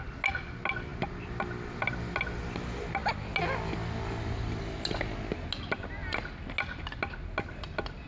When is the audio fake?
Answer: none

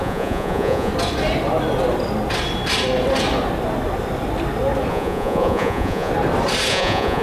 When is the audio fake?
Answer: 0.0-0.9 (vocoder, Vocos); 4.9-6.1; 6.7-7.2

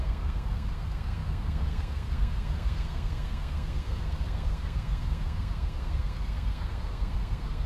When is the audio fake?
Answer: 0.0-7.7 (codec, SNAC)